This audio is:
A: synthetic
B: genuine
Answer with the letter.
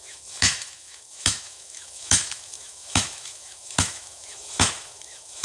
A